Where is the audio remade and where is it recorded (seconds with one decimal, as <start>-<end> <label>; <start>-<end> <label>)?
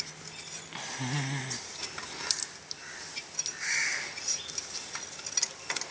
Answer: 0.0-5.9 recorded